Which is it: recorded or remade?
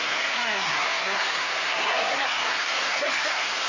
remade